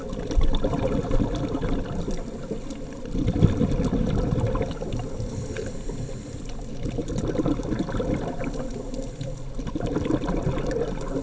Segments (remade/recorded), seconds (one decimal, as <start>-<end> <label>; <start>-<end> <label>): 0.0-11.2 recorded